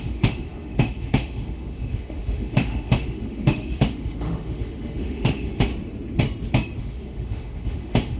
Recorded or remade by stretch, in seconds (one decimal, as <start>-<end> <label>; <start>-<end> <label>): 0.0-5.7 remade; 5.7-6.8 recorded; 6.8-8.2 remade